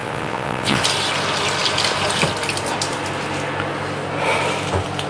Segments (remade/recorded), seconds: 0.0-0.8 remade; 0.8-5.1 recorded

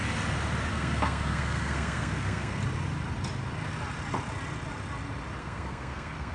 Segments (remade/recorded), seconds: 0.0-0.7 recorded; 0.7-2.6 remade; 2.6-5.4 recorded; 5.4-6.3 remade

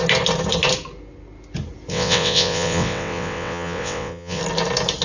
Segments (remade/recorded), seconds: 0.0-1.9 recorded; 1.9-4.4 remade; 4.4-5.0 recorded

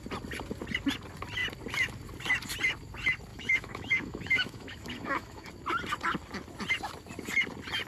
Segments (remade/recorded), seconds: 0.0-3.3 recorded; 3.3-5.5 remade; 5.5-7.9 recorded

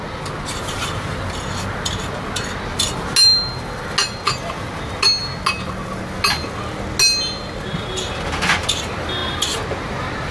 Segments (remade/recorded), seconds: 0.0-10.3 recorded